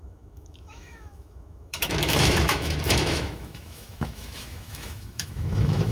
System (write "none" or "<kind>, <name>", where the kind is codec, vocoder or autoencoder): autoencoder, DAC-VAE